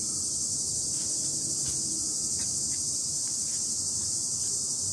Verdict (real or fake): fake